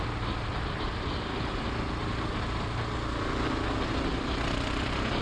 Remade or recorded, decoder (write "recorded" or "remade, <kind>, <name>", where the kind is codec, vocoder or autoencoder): recorded